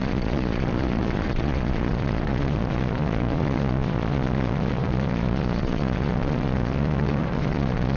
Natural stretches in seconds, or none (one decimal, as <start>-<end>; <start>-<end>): none

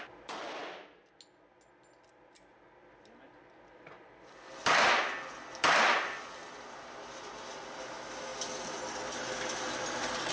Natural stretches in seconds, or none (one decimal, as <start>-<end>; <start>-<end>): 0.0-10.3